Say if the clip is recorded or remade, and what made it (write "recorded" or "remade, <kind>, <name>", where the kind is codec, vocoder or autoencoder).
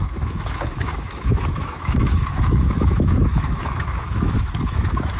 remade, autoencoder, DAC-VAE